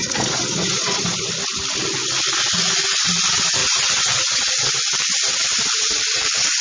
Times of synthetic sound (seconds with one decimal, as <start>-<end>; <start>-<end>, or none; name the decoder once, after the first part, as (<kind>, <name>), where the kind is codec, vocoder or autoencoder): 0.0-1.3 (vocoder, Vocos); 3.6-4.5